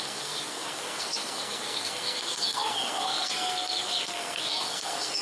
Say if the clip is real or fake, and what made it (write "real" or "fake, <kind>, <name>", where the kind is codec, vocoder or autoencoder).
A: fake, codec, SNAC